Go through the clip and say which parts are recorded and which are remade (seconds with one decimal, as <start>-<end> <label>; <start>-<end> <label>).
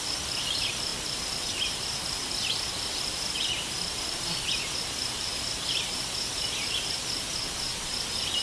0.0-0.9 remade; 0.9-1.7 recorded; 1.7-5.3 remade; 5.3-8.4 recorded